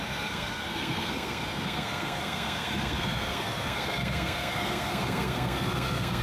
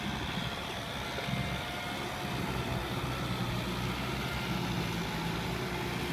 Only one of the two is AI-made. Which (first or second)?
first